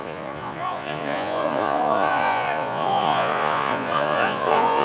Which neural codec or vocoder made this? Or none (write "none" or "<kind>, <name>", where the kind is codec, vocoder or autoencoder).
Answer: vocoder, Vocos